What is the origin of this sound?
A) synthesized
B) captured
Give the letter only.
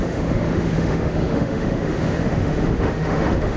A